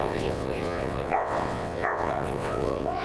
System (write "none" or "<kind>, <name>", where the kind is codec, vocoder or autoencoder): vocoder, WaveNeXt